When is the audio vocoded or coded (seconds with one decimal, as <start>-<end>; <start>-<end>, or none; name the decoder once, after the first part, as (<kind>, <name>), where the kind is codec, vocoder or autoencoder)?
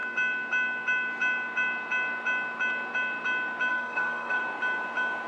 3.7-4.4 (codec, SNAC)